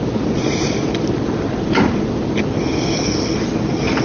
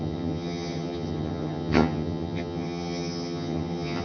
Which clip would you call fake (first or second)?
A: second